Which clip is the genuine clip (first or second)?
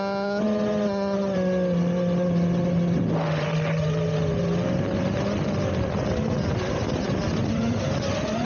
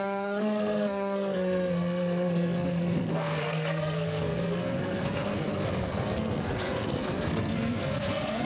first